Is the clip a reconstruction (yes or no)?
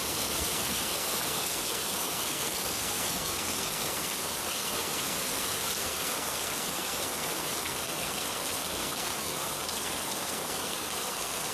yes